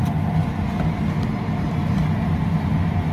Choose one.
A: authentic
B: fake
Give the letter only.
A